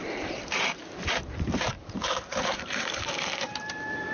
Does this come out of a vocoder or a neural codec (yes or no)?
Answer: yes